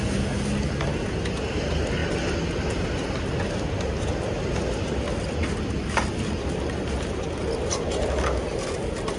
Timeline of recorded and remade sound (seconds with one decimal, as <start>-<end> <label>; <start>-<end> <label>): 0.0-9.2 recorded

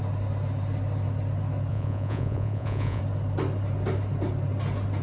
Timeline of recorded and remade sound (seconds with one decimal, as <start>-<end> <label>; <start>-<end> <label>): 0.0-1.7 recorded; 1.7-3.0 remade; 3.0-5.0 recorded

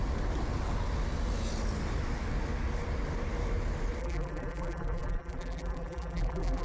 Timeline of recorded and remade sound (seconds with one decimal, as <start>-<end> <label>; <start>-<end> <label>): 0.0-4.0 recorded; 4.0-6.6 remade

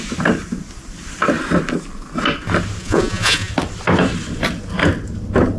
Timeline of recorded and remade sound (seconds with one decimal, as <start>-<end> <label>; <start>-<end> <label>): 0.0-2.8 recorded; 2.8-3.5 remade; 3.5-5.6 recorded

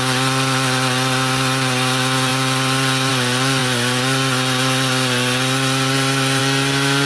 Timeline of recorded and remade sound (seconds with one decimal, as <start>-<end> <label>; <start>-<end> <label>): 0.0-7.1 recorded

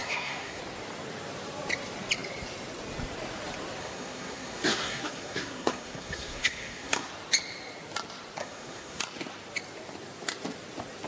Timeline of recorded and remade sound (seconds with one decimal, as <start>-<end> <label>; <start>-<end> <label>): 0.0-0.6 remade; 0.6-3.8 recorded; 3.8-7.1 remade; 7.1-8.4 recorded; 8.4-9.0 remade; 9.0-11.1 recorded